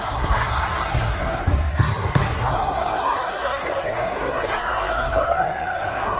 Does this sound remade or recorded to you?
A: remade